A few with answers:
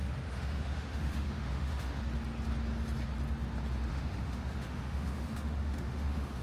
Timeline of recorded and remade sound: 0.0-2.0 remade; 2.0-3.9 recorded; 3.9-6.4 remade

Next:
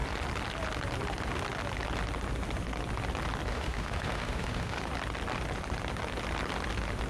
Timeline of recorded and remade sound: 0.0-3.5 recorded; 3.5-4.8 remade; 4.8-7.1 recorded